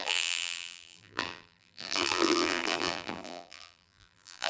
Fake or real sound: fake